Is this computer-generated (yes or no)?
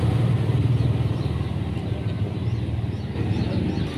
no